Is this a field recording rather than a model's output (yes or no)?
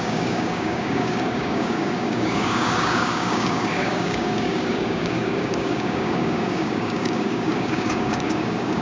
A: no